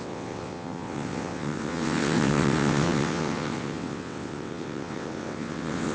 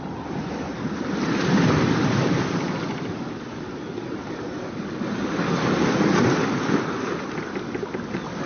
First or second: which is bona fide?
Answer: second